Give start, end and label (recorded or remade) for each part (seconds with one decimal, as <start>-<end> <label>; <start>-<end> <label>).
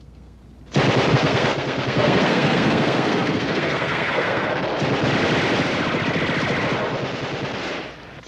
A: 0.0-0.4 remade; 0.4-1.1 recorded; 1.1-4.6 remade; 4.6-8.3 recorded